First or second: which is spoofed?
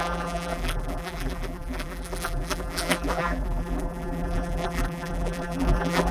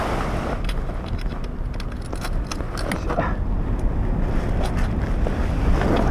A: first